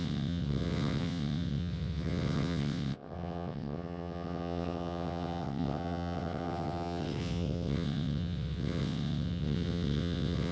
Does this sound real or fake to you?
fake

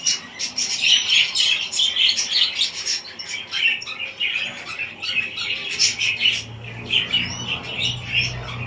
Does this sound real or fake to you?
real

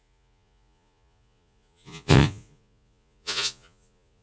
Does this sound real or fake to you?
fake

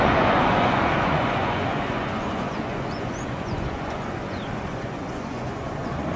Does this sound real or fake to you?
fake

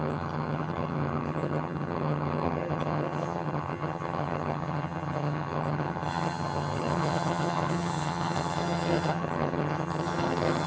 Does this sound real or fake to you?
fake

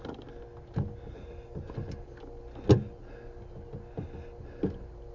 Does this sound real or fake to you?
real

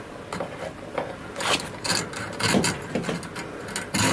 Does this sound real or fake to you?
real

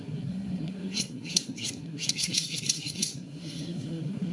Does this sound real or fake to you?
fake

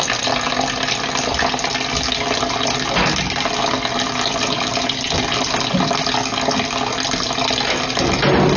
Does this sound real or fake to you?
real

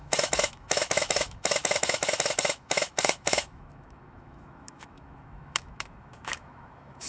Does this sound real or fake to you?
fake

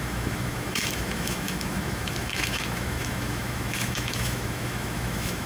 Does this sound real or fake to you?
fake